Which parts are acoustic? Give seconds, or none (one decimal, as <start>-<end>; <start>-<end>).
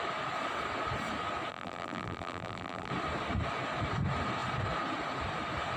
0.0-1.5; 2.9-5.8